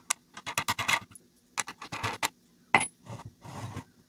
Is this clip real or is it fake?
real